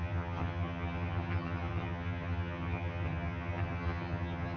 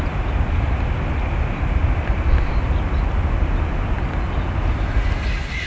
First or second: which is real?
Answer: second